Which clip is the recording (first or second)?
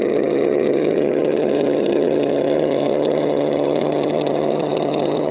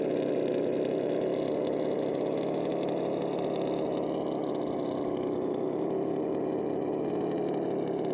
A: second